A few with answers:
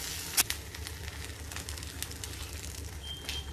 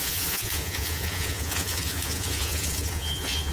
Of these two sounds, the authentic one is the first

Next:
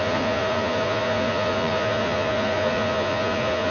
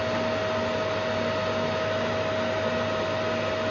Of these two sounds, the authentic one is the second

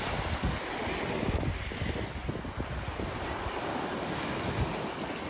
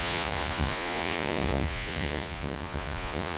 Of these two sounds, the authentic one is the first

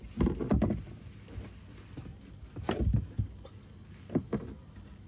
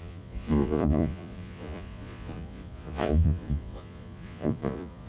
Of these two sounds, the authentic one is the first